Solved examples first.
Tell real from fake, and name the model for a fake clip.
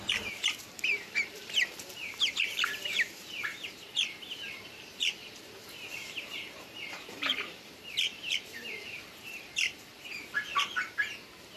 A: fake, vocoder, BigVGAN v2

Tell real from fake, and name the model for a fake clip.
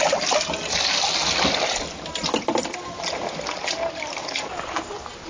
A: real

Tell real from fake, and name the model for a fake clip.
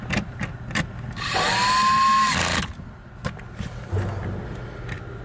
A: real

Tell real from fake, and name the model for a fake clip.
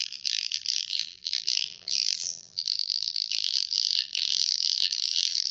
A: fake, vocoder, BigVGAN v2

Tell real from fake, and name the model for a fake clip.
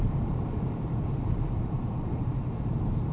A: fake, vocoder, BigVGAN v2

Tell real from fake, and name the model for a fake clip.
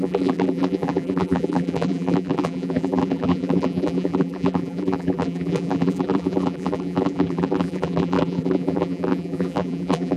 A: fake, vocoder, BigVGAN v2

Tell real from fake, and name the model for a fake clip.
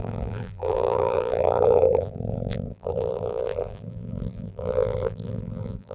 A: fake, vocoder, BigVGAN v2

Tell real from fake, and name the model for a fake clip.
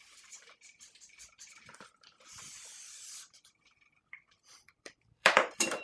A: fake, vocoder, BigVGAN v2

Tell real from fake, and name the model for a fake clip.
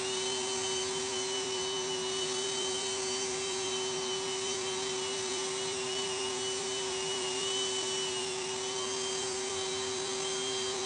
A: fake, vocoder, BigVGAN v2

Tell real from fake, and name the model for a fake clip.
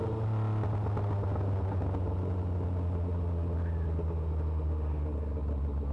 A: real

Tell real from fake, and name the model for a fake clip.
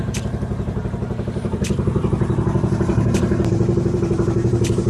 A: fake, vocoder, BigVGAN v2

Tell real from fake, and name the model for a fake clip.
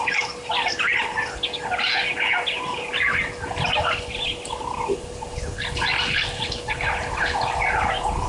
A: real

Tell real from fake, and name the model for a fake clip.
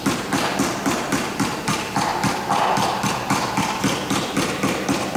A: real